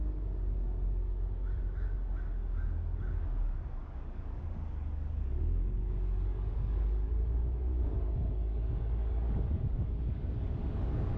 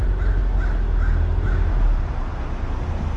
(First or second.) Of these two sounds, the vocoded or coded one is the first